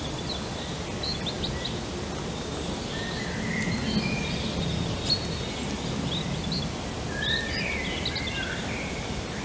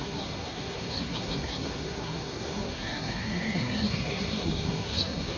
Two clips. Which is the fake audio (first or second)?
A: second